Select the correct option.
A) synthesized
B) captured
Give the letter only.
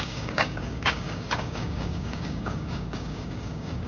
A